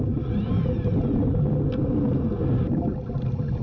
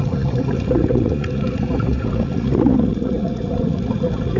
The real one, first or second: first